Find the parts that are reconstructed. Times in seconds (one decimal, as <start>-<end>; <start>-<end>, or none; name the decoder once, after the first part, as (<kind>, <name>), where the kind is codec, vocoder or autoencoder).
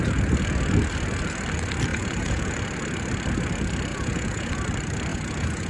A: 1.9-2.5 (vocoder, Vocos); 3.9-4.5; 5.1-5.7